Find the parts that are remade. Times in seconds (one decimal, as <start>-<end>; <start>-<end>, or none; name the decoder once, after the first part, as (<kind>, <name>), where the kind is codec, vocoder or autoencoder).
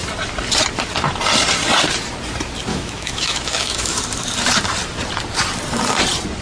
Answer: 2.7-4.0 (autoencoder, DAC-VAE)